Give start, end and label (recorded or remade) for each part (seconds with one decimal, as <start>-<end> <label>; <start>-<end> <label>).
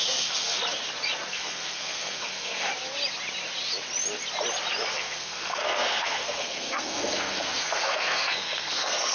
0.0-0.6 remade; 0.6-1.3 recorded; 1.3-2.7 remade; 2.7-4.9 recorded; 4.9-9.1 remade